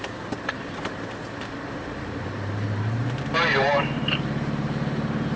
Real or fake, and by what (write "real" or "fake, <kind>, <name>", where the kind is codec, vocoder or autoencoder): fake, vocoder, BigVGAN v2